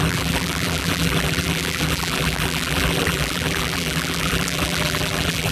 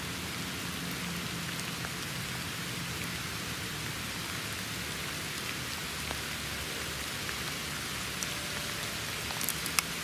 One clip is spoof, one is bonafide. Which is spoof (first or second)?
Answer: first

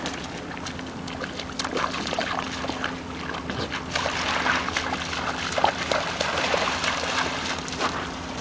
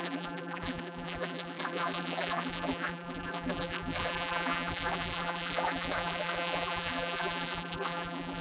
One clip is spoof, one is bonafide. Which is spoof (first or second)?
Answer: second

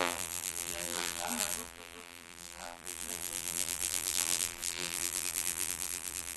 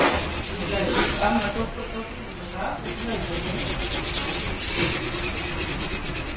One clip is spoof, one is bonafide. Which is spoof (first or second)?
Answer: first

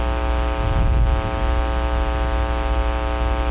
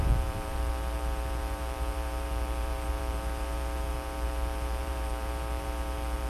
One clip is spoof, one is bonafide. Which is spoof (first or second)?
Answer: second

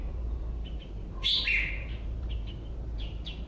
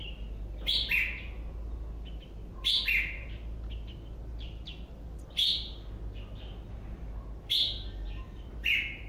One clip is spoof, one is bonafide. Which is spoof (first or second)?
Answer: first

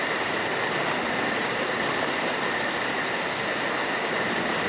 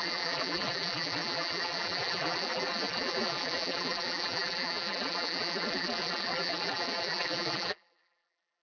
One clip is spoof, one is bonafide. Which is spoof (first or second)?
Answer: second